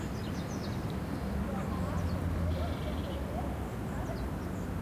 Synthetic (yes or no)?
no